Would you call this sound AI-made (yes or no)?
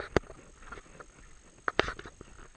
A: no